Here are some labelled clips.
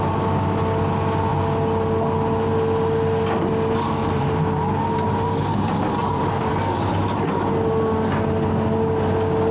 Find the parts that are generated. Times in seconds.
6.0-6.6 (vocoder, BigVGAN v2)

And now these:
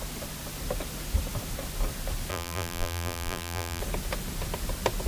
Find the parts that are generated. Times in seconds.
2.3-3.8 (vocoder, BigVGAN v2)

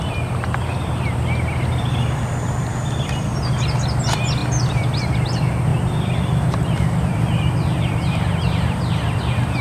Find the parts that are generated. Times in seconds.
4.4-5.0 (vocoder, BigVGAN v2); 5.7-9.2

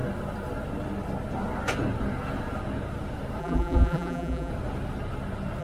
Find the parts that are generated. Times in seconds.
3.4-4.5 (vocoder, BigVGAN v2)

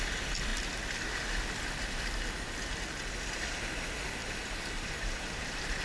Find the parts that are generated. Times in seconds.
4.2-5.8 (vocoder, BigVGAN v2)

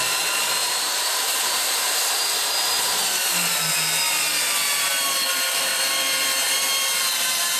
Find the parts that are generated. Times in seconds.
0.6-2.8 (vocoder, BigVGAN v2)